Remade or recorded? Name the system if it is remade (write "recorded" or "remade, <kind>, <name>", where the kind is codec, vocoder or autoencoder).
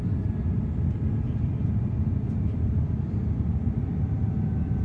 recorded